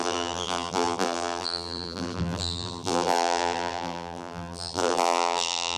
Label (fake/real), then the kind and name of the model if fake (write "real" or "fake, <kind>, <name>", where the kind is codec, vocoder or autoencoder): fake, vocoder, BigVGAN v2